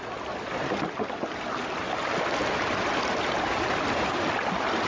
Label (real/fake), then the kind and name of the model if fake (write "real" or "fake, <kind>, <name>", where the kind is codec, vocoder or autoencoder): real